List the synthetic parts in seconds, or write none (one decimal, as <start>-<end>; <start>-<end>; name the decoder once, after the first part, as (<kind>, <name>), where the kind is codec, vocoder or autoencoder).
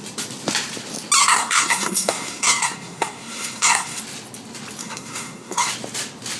1.2-4.0 (codec, SNAC); 4.8-5.7